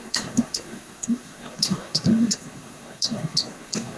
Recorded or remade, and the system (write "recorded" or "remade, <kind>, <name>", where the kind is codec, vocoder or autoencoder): remade, codec, SNAC